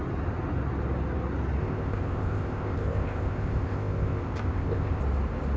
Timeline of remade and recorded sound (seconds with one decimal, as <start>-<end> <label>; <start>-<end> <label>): 0.0-1.6 recorded; 1.6-5.0 remade; 5.0-5.6 recorded